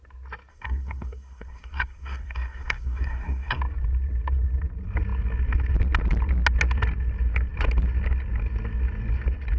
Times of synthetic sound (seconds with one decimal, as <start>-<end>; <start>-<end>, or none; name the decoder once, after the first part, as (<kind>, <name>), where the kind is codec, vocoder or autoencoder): 0.5-3.6 (codec, SNAC)